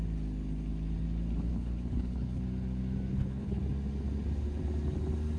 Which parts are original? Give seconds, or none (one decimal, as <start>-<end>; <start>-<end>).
0.0-1.5; 2.4-3.1; 3.6-5.4